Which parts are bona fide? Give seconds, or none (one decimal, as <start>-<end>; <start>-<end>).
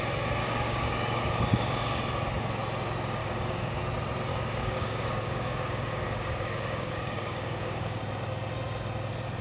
0.0-0.4; 2.0-3.2; 3.8-4.3; 8.0-9.4